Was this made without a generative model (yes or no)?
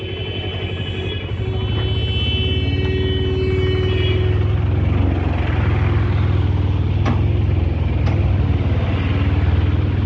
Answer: yes